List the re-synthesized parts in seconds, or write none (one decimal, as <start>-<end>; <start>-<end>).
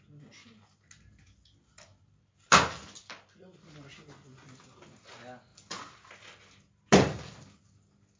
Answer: none